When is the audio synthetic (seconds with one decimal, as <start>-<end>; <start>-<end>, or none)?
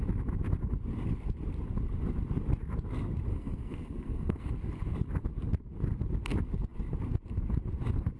3.3-4.5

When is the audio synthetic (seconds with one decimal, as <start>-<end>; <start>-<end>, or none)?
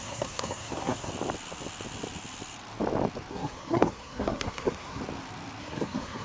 0.0-1.1; 3.3-5.0; 5.6-6.2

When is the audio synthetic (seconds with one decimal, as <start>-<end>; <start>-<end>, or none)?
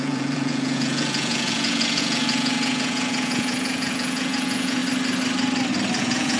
0.0-4.8; 6.0-6.4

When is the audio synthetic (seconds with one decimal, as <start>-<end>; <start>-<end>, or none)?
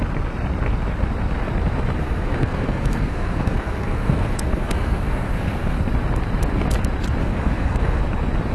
2.0-5.8; 7.2-8.0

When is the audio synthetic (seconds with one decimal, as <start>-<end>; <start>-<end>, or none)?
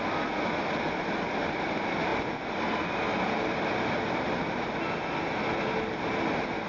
none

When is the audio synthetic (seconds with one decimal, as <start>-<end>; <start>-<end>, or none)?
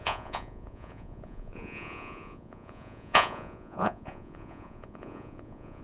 0.0-5.8